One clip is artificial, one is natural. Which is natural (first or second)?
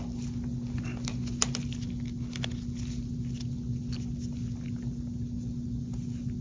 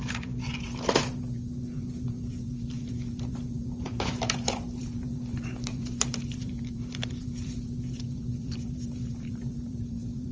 first